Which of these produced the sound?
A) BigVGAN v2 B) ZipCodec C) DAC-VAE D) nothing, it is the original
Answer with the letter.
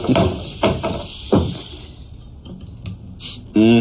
D